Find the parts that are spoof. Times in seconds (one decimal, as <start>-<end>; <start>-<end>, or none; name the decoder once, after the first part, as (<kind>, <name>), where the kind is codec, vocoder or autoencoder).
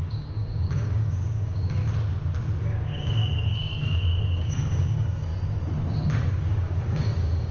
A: 0.0-1.8 (codec, DAC); 2.6-5.3; 6.3-7.5